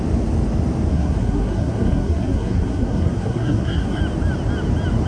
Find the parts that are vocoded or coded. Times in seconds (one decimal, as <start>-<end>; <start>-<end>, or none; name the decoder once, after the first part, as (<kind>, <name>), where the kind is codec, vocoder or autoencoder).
0.9-4.0 (codec, SNAC)